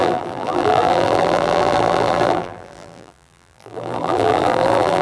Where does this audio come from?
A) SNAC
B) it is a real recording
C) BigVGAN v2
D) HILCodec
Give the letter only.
C